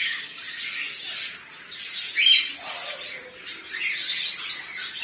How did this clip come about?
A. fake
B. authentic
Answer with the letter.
A